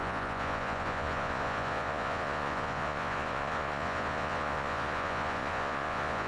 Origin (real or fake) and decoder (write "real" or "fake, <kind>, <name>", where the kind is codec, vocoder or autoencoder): fake, vocoder, Vocos